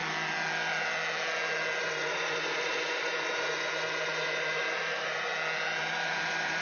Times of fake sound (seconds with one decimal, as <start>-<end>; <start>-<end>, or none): 1.8-5.3; 5.8-6.6